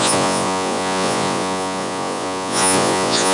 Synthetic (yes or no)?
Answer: yes